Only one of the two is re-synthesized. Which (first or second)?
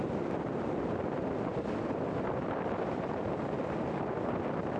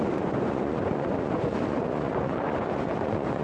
second